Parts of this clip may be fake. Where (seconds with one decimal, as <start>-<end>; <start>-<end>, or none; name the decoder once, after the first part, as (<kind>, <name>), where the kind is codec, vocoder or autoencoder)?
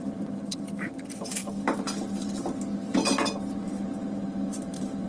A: 0.0-1.4 (vocoder, BigVGAN v2); 3.6-5.1